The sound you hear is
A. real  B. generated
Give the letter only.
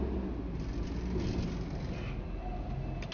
A